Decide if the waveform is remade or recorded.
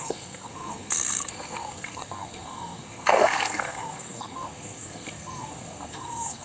remade